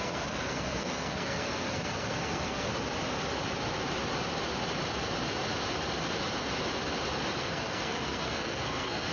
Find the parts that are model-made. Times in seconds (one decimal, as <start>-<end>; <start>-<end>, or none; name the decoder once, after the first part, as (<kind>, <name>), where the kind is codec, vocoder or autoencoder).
0.0-2.7 (codec, SNAC); 7.4-9.1